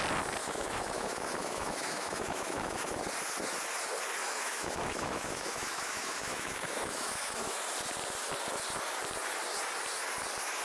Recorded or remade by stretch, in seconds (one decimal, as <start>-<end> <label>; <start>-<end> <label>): 0.0-0.4 recorded; 0.4-3.0 remade; 3.0-4.2 recorded; 4.2-7.6 remade; 7.6-10.6 recorded